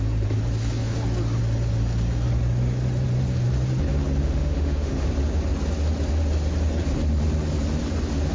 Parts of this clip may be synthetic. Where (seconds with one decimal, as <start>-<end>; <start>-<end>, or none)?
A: 4.2-5.1